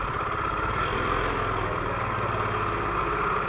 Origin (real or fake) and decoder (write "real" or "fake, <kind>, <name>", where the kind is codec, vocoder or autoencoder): real